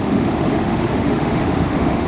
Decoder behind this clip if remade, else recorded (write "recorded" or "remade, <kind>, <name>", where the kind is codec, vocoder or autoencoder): remade, autoencoder, DAC-VAE